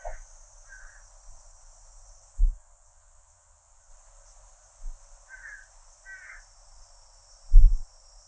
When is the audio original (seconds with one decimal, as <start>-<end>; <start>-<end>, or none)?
0.0-2.4; 3.9-8.3